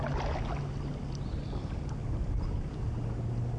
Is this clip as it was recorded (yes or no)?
yes